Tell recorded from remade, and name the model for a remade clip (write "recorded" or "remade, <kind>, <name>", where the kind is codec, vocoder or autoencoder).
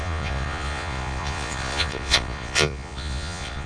remade, vocoder, Vocos